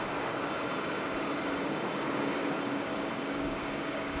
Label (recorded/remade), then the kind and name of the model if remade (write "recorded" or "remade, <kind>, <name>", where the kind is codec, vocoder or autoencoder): remade, codec, DAC